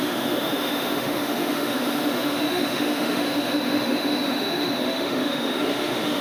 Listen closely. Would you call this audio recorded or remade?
remade